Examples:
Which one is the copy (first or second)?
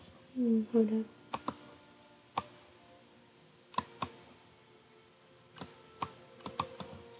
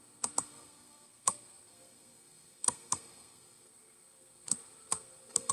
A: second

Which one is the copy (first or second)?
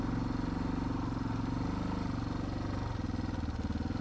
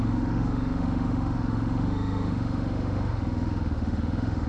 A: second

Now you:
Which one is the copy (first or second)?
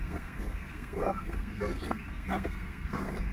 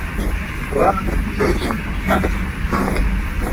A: first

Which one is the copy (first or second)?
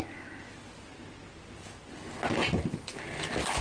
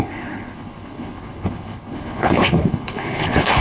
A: second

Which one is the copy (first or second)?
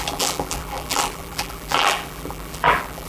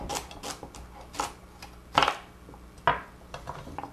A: first